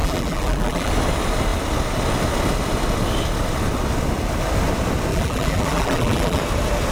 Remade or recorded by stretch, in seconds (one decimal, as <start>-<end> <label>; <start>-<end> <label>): 0.0-0.9 remade; 0.9-5.1 recorded; 5.1-6.4 remade; 6.4-6.9 recorded